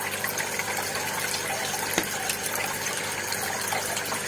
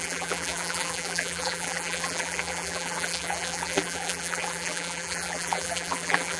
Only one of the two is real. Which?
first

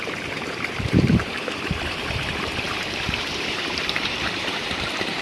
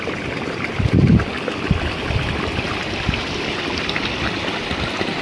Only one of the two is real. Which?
second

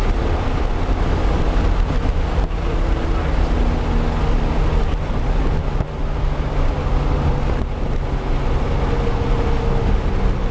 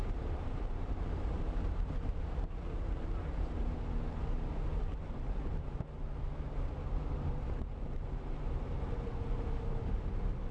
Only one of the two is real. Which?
first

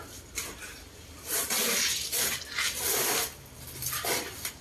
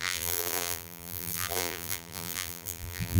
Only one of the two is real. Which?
first